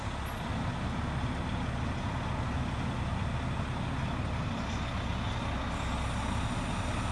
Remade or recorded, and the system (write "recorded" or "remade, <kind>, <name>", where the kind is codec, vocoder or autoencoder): recorded